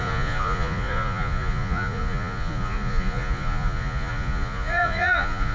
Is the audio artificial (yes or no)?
yes